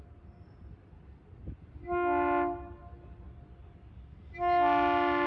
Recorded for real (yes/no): yes